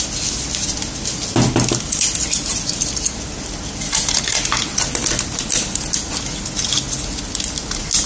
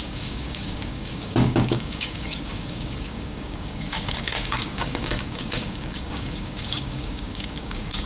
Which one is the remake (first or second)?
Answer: second